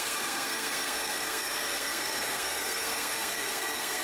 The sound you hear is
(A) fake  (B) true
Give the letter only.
A